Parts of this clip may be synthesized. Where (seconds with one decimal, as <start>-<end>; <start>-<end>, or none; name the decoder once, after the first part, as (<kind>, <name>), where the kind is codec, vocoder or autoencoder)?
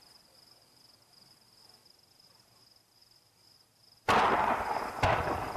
none